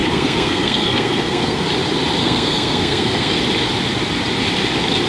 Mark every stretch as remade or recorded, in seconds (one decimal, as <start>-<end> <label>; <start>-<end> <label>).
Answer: 0.0-1.7 remade; 1.7-2.2 recorded; 2.2-3.4 remade; 3.4-5.1 recorded